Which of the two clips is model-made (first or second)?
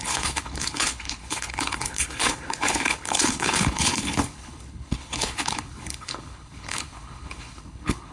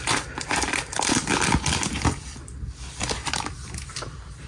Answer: first